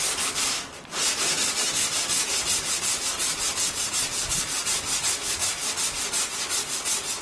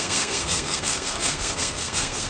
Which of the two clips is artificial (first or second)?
second